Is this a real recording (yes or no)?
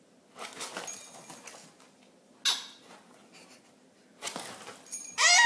yes